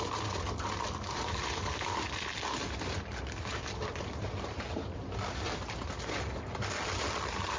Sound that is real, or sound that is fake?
real